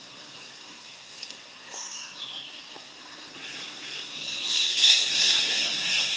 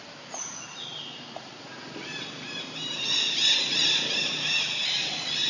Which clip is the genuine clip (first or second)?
second